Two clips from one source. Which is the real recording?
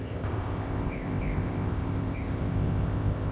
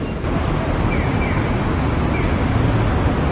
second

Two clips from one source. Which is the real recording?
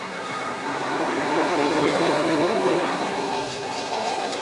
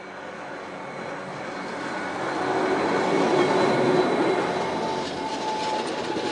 second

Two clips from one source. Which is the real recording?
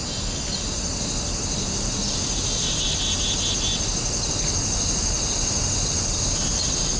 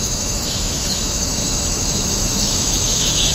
first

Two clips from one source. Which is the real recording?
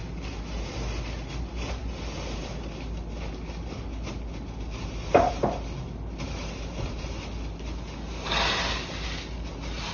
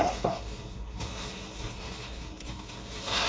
first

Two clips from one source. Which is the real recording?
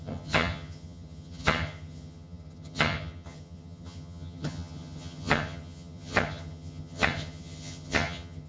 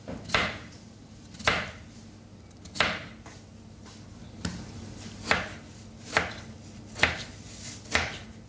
second